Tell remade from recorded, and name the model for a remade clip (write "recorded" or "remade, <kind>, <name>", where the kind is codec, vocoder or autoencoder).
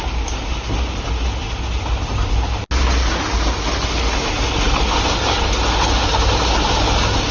recorded